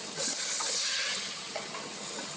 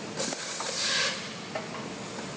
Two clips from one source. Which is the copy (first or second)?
first